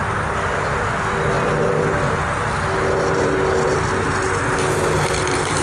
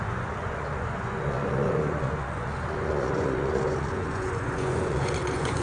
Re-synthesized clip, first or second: second